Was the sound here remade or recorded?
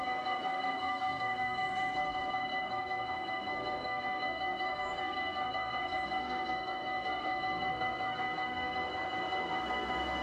remade